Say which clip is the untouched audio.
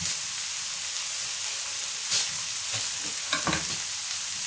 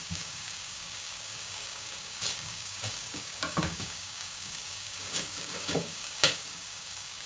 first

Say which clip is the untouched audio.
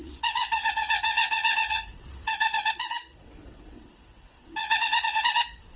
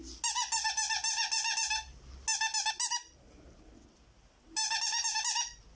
second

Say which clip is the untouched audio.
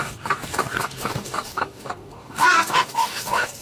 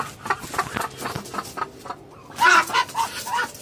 second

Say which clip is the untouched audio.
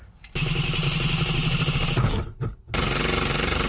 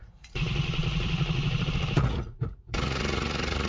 first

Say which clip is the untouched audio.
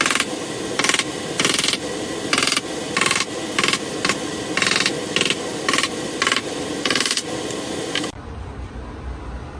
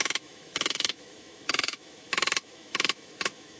first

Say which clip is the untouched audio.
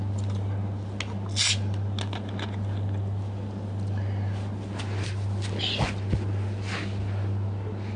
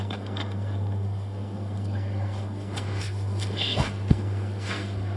first